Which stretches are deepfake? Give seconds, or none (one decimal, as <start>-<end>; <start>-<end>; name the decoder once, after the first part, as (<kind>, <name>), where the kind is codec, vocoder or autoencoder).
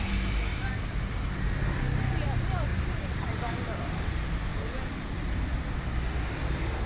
2.7-3.4 (vocoder, BigVGAN v2); 4.5-5.5